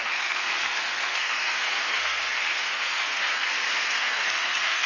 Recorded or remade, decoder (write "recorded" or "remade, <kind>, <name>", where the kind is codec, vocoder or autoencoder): remade, codec, SNAC